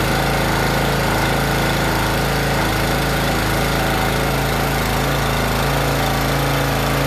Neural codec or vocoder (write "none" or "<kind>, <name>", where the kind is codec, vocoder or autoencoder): none